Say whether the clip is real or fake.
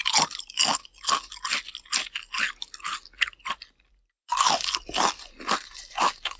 real